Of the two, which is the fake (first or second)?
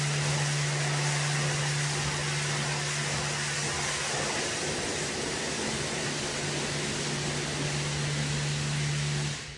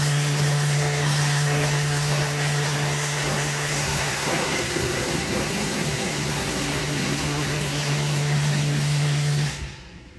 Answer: second